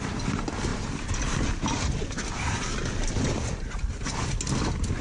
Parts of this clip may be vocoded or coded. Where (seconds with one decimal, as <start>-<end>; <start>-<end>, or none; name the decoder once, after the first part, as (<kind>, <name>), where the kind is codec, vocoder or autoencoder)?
none